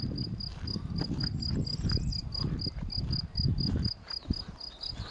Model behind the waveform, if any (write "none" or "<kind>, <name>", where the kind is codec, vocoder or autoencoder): none